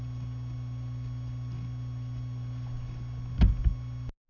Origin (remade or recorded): recorded